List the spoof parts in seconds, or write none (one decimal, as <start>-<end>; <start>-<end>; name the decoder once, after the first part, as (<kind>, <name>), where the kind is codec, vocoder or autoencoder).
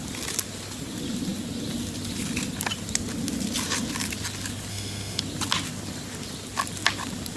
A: 4.7-5.2 (autoencoder, DAC-VAE)